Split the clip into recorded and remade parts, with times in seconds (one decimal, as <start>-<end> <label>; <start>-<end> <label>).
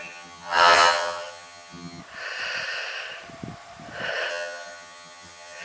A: 0.0-2.0 remade; 2.0-4.3 recorded; 4.3-5.6 remade